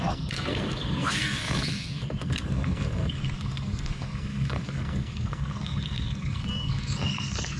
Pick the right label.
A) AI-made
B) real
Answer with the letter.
A